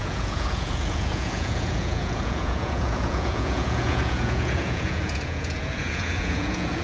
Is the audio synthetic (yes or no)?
yes